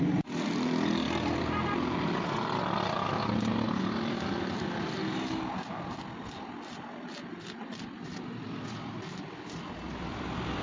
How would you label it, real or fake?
real